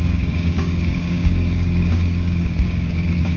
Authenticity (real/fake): fake